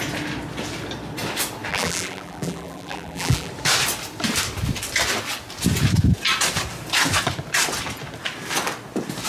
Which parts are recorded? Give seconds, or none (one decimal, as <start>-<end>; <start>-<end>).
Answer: 0.0-1.7; 3.5-9.3